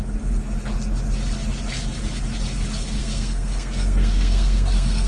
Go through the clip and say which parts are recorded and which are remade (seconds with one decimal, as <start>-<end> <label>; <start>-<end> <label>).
0.0-3.0 recorded; 3.0-5.1 remade